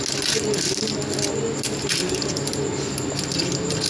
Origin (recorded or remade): recorded